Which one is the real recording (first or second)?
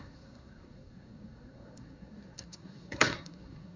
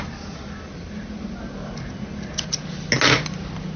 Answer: second